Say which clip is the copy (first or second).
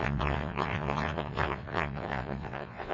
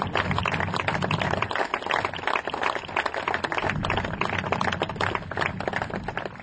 first